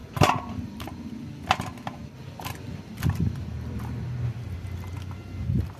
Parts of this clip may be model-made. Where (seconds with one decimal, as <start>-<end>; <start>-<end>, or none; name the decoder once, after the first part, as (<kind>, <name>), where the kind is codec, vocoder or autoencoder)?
0.0-0.8 (vocoder, BigVGAN v2); 2.0-3.8